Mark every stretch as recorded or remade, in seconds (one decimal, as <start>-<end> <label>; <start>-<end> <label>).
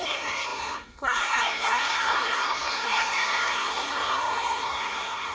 0.0-5.3 remade